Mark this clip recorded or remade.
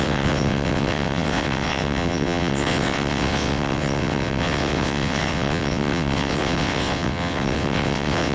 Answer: remade